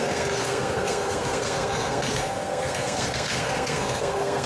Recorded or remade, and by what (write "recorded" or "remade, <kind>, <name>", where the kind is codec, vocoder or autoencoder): remade, codec, SNAC